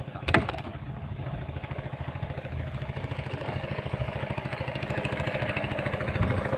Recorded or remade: remade